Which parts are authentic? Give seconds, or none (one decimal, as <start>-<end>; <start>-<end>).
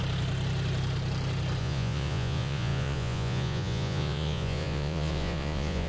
0.0-1.6